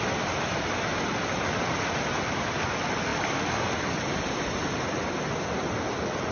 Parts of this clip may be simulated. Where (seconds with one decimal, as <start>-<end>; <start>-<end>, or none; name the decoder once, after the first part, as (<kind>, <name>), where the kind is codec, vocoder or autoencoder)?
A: none